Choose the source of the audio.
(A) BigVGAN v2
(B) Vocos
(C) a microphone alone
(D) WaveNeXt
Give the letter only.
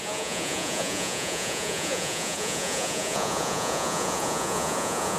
B